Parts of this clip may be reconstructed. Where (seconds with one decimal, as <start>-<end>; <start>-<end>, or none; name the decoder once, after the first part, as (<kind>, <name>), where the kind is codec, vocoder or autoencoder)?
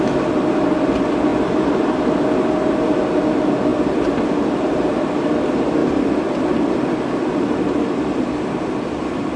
1.3-1.9 (vocoder, BigVGAN v2)